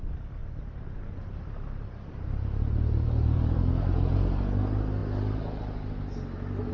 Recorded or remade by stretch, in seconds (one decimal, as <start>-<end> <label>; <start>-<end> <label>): 0.0-0.4 recorded; 0.4-4.4 remade; 4.4-6.7 recorded

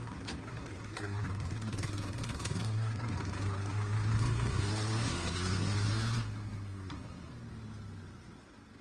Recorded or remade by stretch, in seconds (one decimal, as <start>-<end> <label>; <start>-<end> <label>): 0.0-7.3 remade; 7.3-8.8 recorded